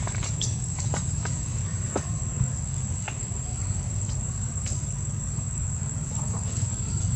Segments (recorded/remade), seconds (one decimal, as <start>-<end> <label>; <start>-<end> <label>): 0.0-7.2 remade